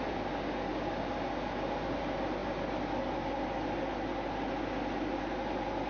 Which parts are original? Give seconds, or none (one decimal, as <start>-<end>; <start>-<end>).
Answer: 0.0-5.9